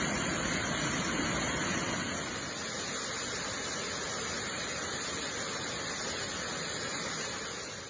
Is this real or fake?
real